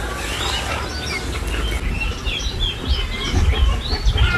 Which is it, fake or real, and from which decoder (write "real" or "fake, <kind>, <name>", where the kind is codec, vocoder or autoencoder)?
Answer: real